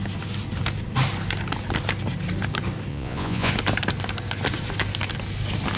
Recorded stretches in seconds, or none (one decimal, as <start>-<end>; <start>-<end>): 0.0-2.9; 3.5-5.8